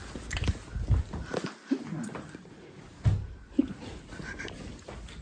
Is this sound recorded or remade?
recorded